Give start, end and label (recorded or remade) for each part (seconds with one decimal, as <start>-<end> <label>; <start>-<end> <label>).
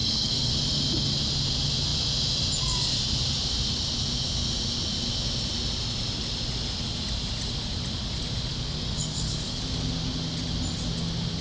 0.0-0.5 remade; 0.5-8.5 recorded; 8.5-9.6 remade; 9.6-11.4 recorded